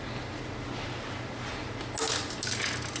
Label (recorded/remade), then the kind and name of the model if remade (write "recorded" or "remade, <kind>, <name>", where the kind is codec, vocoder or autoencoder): recorded